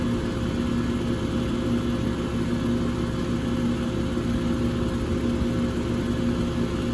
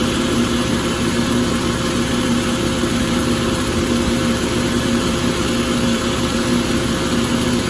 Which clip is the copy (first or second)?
second